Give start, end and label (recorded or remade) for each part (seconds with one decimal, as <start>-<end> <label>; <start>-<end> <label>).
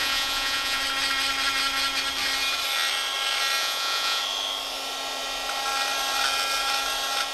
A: 0.0-0.8 remade; 0.8-3.6 recorded; 3.6-4.2 remade; 4.2-7.3 recorded